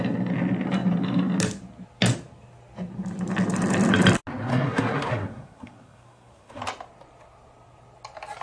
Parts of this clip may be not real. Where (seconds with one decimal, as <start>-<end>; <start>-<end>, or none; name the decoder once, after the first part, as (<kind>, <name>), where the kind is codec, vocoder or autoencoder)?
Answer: 4.5-6.6 (codec, SNAC)